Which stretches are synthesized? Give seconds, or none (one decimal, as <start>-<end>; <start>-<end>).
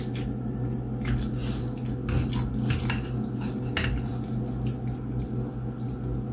none